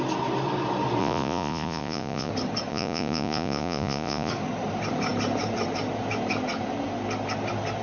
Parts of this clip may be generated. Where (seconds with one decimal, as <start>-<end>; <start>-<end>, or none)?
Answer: 1.0-2.3; 2.7-4.3